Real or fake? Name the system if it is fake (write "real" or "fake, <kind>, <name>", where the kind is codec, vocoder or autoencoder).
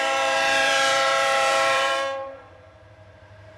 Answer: fake, vocoder, BigVGAN v2